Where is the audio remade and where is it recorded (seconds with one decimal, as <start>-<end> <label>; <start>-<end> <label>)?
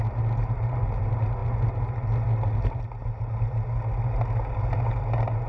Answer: 0.0-5.5 recorded